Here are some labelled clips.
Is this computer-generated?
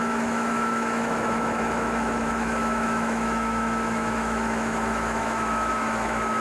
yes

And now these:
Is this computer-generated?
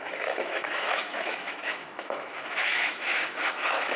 yes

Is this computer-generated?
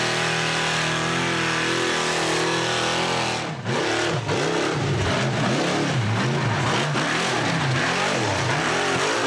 no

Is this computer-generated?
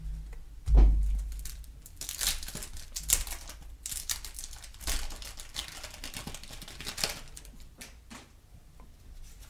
no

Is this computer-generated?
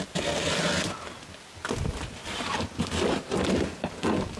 no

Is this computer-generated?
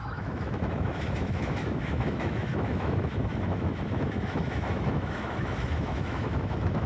yes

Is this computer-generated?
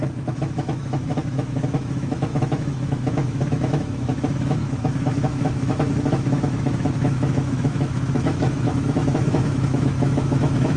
yes